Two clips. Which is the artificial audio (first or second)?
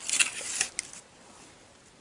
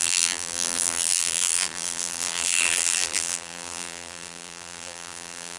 second